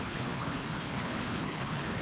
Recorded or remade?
remade